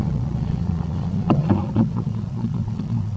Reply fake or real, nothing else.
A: fake